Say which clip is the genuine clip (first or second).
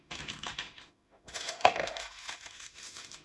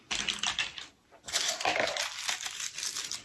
second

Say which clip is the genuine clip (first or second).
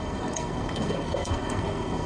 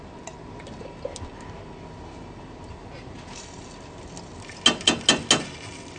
second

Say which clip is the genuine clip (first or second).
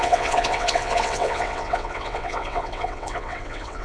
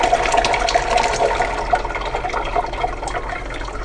second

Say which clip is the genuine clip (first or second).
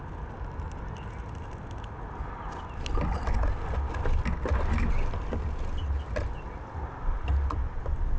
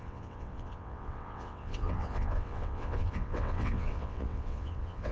first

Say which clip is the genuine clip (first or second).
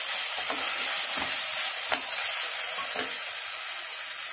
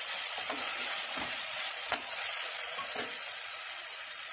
first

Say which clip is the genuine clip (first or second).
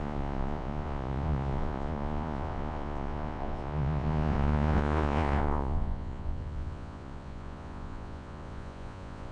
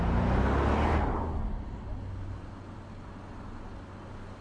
second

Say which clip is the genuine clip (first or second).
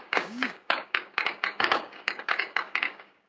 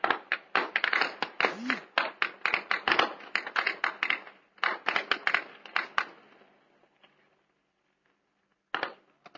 second